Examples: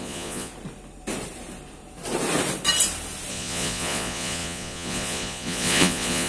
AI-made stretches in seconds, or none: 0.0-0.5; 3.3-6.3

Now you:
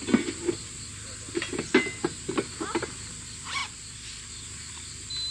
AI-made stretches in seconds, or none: none

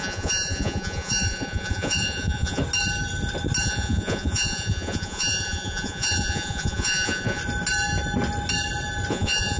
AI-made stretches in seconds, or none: 0.0-2.6; 3.6-7.4; 9.1-9.6

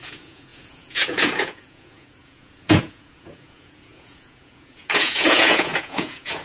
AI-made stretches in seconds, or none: 0.0-6.4

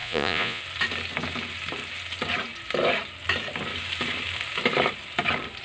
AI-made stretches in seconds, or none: 0.0-0.6

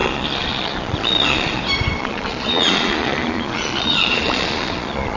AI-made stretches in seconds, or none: 0.0-1.6; 2.0-5.2